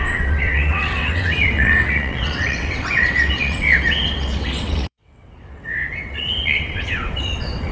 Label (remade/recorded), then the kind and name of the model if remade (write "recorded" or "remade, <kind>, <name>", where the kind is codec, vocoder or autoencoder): remade, vocoder, WaveNeXt